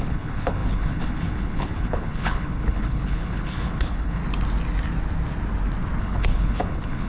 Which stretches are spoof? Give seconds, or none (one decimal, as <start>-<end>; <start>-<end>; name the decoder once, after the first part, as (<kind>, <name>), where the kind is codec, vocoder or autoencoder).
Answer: 0.0-4.2 (codec, HILCodec); 6.0-7.1